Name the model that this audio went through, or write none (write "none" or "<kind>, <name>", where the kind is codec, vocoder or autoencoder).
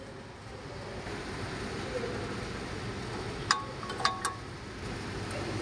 none